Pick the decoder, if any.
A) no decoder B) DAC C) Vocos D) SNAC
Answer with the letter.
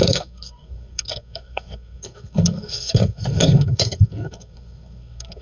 D